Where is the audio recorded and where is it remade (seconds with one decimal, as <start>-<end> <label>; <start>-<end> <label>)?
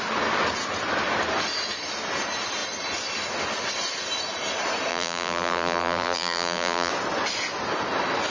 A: 0.0-4.9 recorded; 4.9-6.9 remade; 6.9-8.3 recorded